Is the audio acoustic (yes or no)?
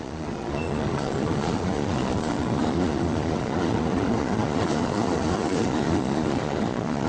no